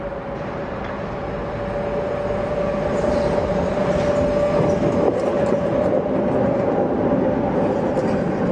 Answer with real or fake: real